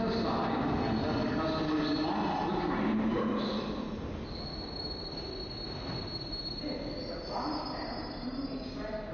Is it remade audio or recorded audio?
recorded